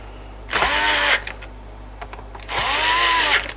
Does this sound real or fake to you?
real